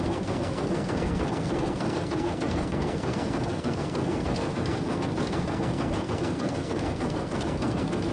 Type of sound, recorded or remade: remade